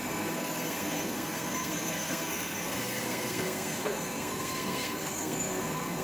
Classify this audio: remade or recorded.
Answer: remade